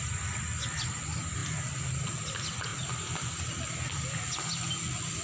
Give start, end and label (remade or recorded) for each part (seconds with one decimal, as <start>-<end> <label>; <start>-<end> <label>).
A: 0.0-5.2 recorded